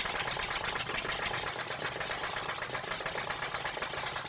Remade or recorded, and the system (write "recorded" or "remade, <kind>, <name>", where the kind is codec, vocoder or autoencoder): recorded